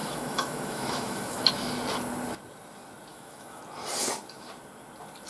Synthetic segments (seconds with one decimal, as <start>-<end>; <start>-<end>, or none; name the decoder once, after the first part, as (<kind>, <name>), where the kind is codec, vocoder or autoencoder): 0.0-1.5 (autoencoder, DAC-VAE); 3.1-3.6